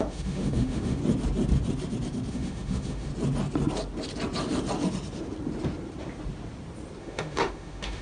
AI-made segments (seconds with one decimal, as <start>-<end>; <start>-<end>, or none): 0.0-1.0; 2.3-3.1; 7.0-8.0